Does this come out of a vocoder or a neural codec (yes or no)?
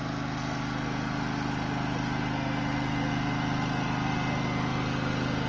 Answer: no